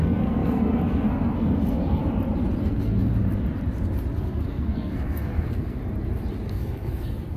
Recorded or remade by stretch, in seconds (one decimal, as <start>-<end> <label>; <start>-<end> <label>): 0.0-2.0 remade; 2.0-2.6 recorded; 2.6-3.1 remade; 3.1-4.2 recorded; 4.2-5.8 remade; 5.8-6.5 recorded; 6.5-7.4 remade